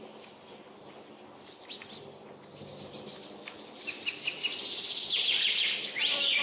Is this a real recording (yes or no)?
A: yes